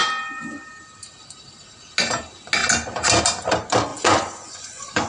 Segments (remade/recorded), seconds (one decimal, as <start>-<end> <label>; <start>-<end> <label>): 0.0-3.9 recorded; 3.9-5.1 remade

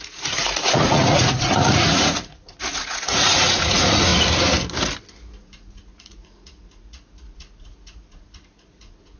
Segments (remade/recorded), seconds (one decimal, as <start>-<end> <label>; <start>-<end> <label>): 0.0-4.1 remade; 4.1-5.4 recorded; 5.4-9.2 remade